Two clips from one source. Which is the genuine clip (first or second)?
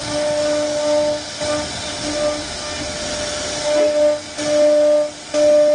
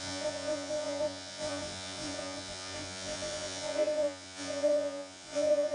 first